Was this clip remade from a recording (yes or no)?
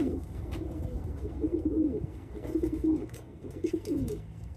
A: yes